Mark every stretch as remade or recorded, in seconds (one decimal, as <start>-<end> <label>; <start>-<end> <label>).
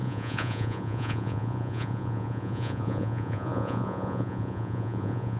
0.0-5.4 remade